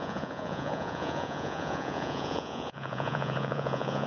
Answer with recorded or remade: remade